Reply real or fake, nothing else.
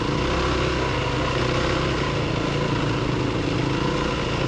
real